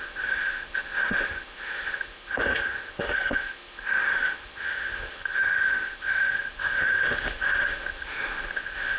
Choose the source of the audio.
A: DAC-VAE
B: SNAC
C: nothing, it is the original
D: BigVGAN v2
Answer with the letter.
A